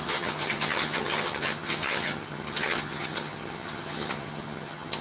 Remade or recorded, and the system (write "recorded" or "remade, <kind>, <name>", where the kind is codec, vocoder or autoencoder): remade, vocoder, HiFi-GAN